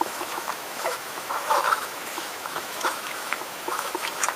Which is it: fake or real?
fake